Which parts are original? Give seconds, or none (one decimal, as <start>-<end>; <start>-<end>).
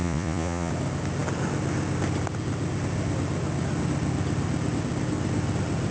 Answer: 0.7-5.9